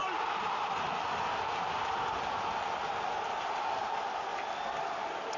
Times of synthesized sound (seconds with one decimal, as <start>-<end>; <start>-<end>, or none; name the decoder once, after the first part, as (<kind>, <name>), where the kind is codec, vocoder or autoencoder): none

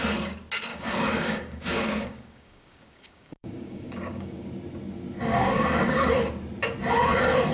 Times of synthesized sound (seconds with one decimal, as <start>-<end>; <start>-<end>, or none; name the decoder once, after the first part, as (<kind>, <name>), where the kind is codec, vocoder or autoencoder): 0.7-4.5 (codec, DAC); 5.3-6.1